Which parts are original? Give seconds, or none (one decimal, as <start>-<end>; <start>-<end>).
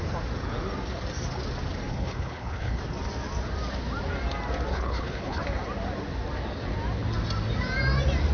0.0-1.9; 2.8-4.7; 5.4-8.3